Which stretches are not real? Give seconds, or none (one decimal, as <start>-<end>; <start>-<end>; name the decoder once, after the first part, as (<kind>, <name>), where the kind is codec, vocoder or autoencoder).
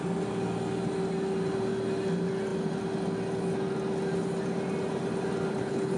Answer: 5.5-6.0 (codec, HILCodec)